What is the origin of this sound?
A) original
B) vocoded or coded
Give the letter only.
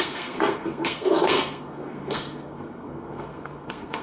B